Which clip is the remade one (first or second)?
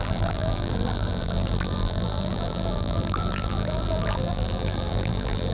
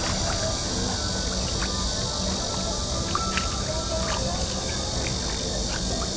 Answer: first